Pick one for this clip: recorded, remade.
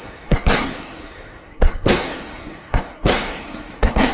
remade